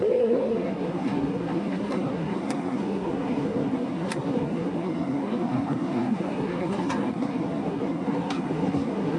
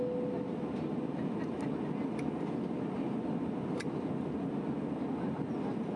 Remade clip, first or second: first